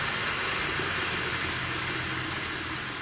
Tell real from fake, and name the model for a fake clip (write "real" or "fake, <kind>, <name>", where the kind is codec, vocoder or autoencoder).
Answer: real